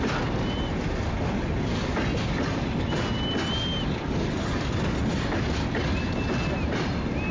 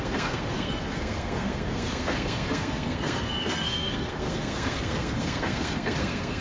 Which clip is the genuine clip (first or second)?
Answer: first